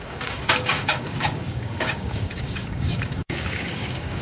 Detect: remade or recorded remade